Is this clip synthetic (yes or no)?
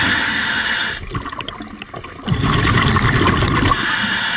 no